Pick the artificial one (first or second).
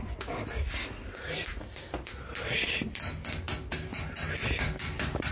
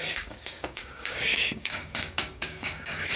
second